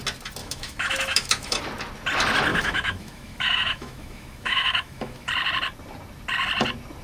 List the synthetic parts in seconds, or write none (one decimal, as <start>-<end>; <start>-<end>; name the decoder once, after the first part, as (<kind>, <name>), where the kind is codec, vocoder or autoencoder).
0.4-1.6 (autoencoder, DAC-VAE); 2.5-5.3